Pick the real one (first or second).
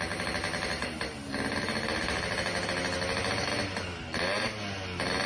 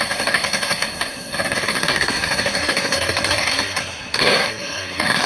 first